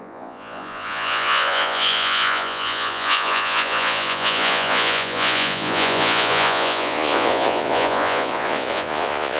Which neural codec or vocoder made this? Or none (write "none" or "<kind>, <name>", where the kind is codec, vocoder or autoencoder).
vocoder, Vocos